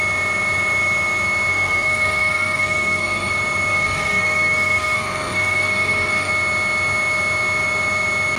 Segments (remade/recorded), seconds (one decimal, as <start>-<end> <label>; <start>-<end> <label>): 0.0-1.5 recorded; 1.5-3.3 remade; 3.3-3.7 recorded; 3.7-6.3 remade; 6.3-8.4 recorded